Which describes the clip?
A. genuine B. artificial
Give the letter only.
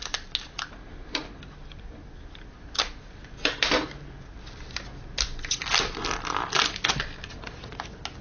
A